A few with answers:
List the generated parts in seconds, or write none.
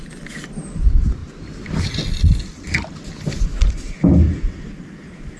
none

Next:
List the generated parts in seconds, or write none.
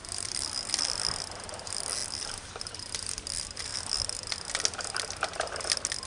none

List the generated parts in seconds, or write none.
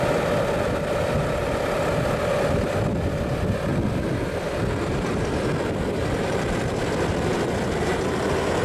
3.7-6.8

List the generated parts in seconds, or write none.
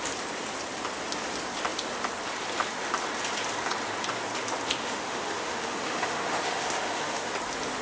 4.8-7.3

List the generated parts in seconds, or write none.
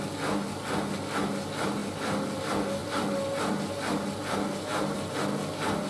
none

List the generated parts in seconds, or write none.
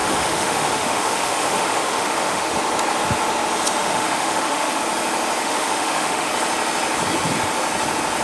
0.0-2.5; 3.8-4.8; 5.4-6.3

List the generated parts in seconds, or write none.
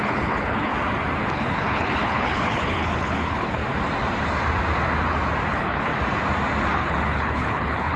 0.0-0.7; 1.3-3.6; 5.5-5.9; 6.7-8.0